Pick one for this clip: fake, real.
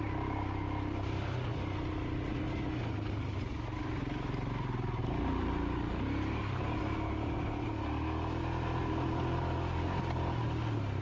real